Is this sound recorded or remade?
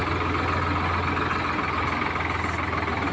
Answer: recorded